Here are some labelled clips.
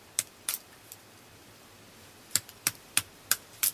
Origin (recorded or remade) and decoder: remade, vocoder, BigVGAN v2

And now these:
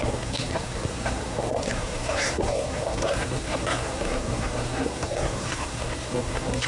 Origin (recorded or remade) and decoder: remade, codec, SNAC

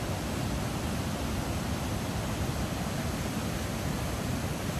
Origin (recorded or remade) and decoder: recorded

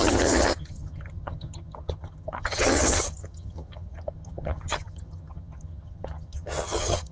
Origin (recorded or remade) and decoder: remade, vocoder, HiFi-GAN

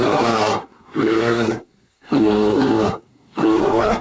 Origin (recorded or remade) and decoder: remade, codec, SNAC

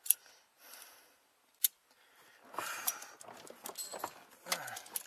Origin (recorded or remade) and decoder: recorded